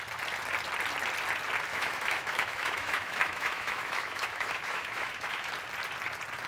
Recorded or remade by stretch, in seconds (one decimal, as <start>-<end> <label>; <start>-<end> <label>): 0.0-1.7 recorded; 1.7-5.5 remade; 5.5-6.5 recorded